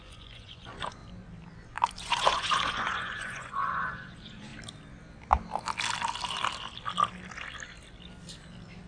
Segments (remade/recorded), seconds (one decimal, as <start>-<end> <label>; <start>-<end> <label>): 0.0-1.0 remade; 1.0-2.0 recorded; 2.0-4.5 remade; 4.5-8.9 recorded

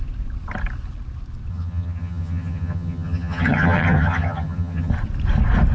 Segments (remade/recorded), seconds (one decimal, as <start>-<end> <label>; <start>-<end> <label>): 0.0-1.5 recorded; 1.5-4.9 remade; 4.9-5.7 recorded

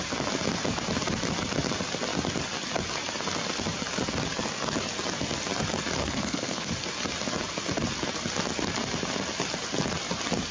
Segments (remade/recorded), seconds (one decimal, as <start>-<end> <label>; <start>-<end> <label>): 0.0-6.0 recorded; 6.0-6.7 remade; 6.7-10.5 recorded

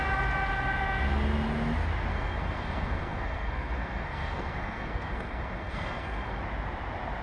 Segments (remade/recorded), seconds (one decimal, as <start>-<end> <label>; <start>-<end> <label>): 0.0-2.1 recorded; 2.1-6.4 remade; 6.4-7.2 recorded